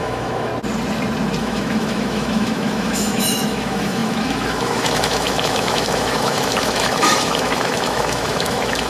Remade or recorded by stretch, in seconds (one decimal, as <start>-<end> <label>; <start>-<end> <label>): 0.0-0.5 remade; 0.5-1.4 recorded; 1.4-8.9 remade